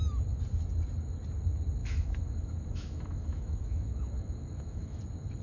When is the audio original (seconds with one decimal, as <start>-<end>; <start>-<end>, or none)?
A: 0.0-1.8; 5.0-5.4